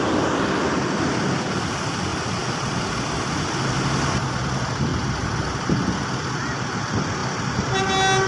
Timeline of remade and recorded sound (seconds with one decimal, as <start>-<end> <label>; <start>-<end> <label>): 0.0-8.3 recorded